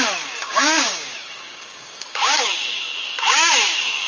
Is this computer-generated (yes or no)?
yes